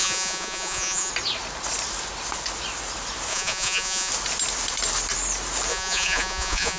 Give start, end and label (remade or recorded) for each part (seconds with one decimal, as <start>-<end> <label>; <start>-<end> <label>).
0.0-1.1 remade; 1.1-3.3 recorded; 3.3-4.1 remade; 4.1-5.7 recorded; 5.7-6.8 remade